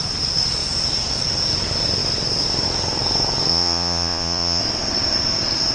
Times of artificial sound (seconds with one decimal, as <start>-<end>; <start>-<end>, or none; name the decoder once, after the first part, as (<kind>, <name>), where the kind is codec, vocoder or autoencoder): 3.5-4.6 (vocoder, Vocos)